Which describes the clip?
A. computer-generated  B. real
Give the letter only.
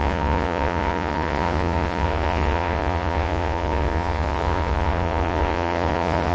A